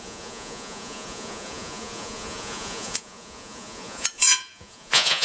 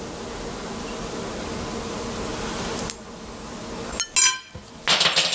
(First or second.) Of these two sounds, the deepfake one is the first